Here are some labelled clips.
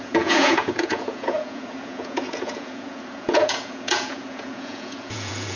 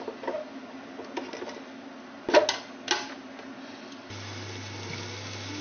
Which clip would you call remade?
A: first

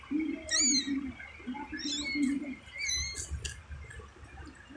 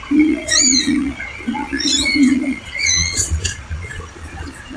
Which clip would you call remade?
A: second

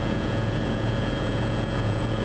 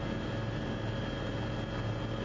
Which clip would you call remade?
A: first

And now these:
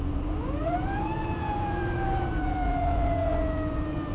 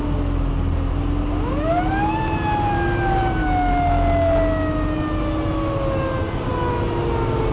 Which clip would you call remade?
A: first